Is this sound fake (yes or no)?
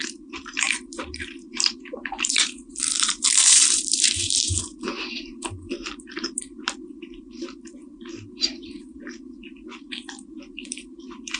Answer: yes